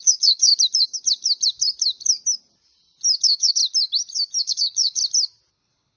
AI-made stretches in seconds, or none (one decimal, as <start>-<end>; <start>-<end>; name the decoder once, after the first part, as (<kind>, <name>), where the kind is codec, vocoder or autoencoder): 0.0-0.5 (codec, HILCodec); 3.2-3.6; 4.4-5.0; 5.5-6.0